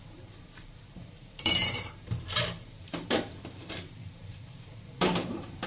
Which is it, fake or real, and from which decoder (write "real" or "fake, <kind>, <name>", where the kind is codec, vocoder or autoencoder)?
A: fake, vocoder, BigVGAN v2